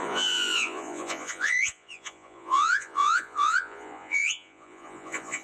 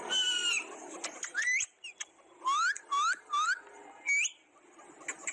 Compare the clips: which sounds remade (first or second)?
first